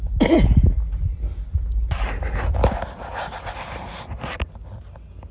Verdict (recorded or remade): recorded